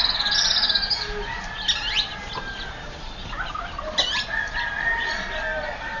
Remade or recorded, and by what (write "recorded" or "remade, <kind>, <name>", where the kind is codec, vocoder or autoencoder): recorded